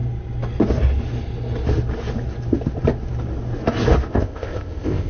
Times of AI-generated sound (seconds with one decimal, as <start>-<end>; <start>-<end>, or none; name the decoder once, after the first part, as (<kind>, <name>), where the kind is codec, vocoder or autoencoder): 4.1-5.1 (codec, ZipCodec)